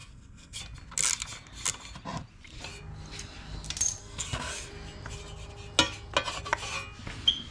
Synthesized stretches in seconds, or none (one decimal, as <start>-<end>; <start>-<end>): 0.0-0.6; 4.0-4.7